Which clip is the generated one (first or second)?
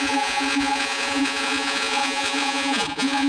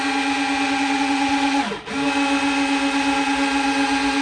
first